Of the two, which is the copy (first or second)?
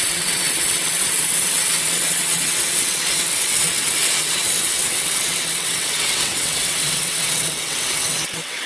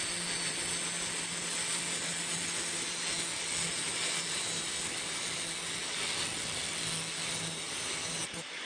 first